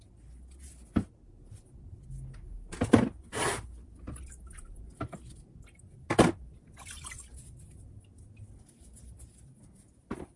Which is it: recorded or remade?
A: recorded